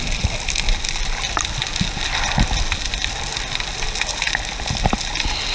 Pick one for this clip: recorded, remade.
recorded